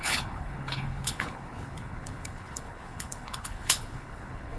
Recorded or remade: remade